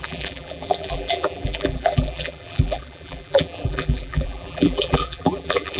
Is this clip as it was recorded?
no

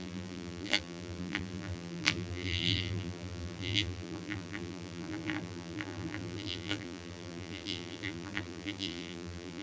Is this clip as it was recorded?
no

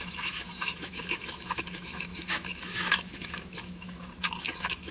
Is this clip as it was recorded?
no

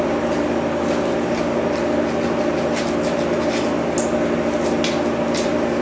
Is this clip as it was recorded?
yes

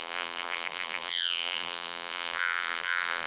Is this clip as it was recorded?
no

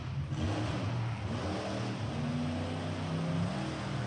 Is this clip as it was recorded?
yes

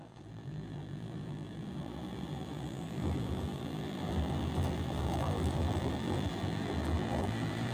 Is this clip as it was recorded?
no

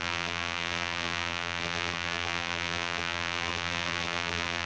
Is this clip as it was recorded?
no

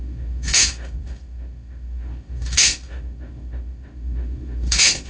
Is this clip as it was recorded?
no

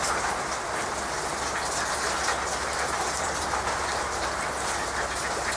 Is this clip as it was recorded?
yes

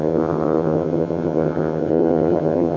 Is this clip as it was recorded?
no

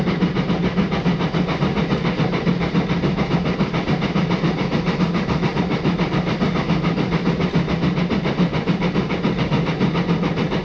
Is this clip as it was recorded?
yes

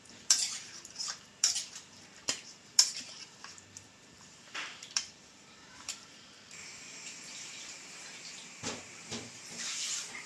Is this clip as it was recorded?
no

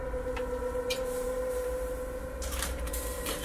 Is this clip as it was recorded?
no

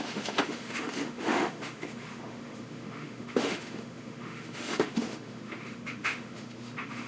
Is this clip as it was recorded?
no